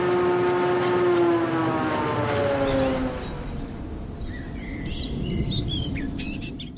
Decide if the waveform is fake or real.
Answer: real